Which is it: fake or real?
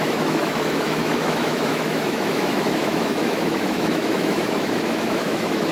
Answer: fake